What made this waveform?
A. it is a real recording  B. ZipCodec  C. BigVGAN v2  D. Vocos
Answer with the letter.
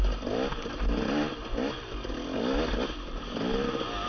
A